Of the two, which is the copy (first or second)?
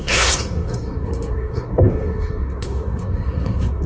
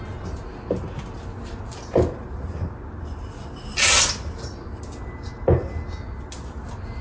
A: first